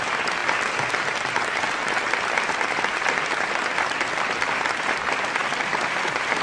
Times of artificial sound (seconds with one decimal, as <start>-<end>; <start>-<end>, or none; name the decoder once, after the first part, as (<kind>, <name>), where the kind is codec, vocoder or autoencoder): none